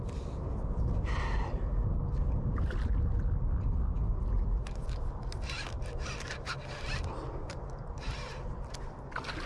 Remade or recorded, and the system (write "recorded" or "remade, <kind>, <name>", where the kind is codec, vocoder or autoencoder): recorded